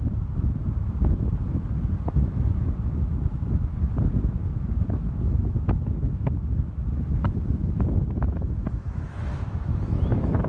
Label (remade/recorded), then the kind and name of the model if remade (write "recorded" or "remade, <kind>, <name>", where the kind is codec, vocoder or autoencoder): remade, autoencoder, DAC-VAE